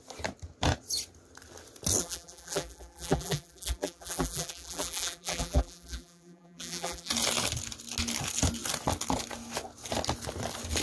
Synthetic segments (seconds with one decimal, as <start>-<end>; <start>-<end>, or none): 2.0-7.1